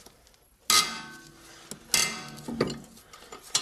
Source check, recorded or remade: recorded